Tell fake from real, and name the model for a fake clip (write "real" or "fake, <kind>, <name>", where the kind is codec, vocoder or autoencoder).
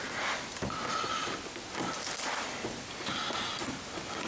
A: real